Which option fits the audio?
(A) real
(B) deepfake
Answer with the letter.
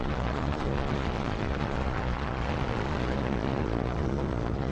B